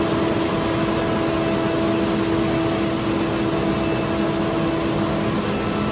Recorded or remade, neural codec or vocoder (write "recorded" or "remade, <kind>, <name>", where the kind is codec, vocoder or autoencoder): recorded